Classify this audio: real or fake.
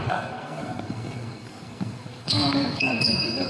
fake